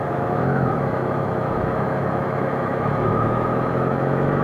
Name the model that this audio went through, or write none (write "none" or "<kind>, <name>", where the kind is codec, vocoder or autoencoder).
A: autoencoder, DAC-VAE